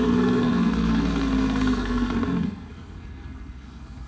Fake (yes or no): yes